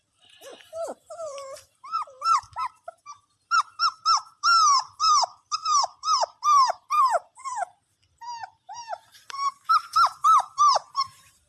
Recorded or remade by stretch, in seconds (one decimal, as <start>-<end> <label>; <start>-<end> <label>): 0.0-7.4 remade; 7.4-8.7 recorded; 8.7-11.5 remade